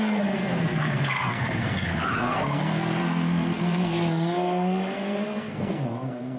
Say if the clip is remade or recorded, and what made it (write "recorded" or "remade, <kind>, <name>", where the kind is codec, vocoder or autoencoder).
remade, codec, SNAC